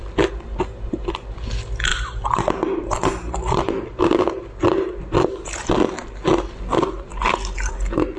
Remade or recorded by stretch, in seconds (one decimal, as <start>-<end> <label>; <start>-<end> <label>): 0.0-8.2 recorded